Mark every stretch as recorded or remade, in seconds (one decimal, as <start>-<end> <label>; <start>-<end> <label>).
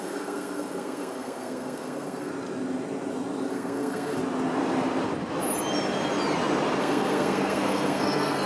0.0-2.3 remade; 2.3-3.5 recorded; 3.5-4.2 remade; 4.2-6.8 recorded; 6.8-8.5 remade